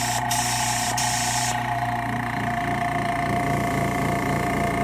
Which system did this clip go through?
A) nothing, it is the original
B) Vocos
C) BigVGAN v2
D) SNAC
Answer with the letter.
C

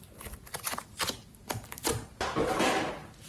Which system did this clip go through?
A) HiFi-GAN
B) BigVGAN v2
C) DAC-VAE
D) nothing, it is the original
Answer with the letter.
D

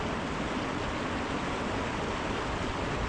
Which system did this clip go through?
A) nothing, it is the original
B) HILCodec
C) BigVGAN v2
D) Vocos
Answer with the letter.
A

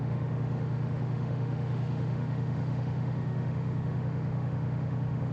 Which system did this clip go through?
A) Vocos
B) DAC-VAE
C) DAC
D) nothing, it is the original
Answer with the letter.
B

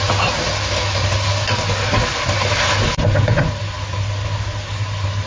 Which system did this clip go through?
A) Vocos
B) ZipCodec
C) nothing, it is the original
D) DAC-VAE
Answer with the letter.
C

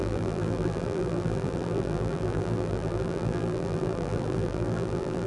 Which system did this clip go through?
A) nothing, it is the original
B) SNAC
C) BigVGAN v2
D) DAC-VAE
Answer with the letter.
C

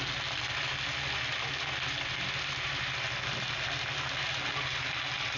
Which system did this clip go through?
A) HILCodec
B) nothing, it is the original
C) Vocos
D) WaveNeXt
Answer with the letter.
B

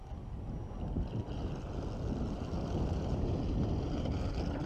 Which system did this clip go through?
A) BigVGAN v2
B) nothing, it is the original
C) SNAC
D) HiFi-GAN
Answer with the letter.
B